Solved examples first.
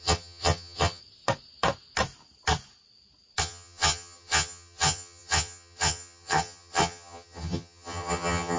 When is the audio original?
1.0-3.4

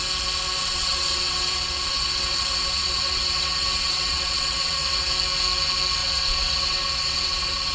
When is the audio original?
0.0-0.6; 5.1-6.0

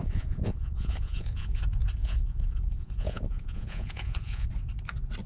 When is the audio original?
1.6-2.0; 4.5-5.3